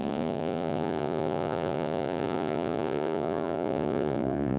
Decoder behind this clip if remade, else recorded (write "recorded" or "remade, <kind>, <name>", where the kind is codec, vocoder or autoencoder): remade, vocoder, Vocos